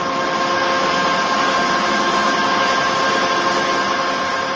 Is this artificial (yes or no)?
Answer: no